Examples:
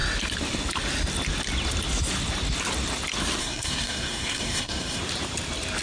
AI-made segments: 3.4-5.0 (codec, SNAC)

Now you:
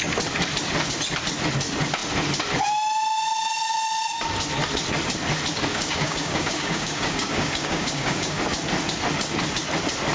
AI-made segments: 5.7-8.4 (codec, DAC)

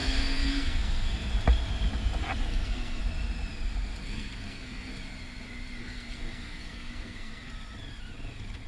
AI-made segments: 0.0-1.3 (codec, SNAC); 2.5-3.0; 4.0-4.9; 5.8-7.5